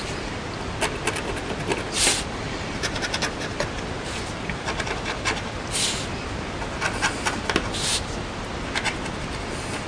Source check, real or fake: real